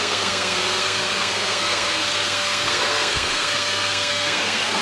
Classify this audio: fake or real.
fake